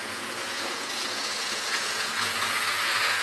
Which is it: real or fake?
fake